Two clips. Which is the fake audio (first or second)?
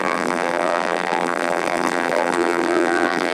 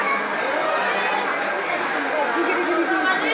first